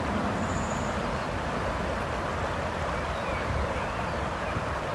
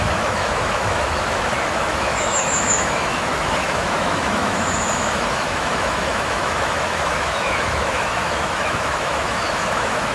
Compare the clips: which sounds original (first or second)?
first